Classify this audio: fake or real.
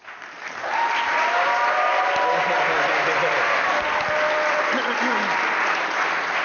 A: real